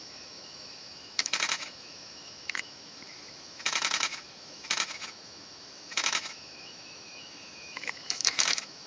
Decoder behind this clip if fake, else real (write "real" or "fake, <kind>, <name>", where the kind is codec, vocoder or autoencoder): fake, autoencoder, DAC-VAE